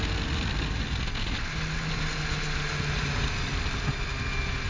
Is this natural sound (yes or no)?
yes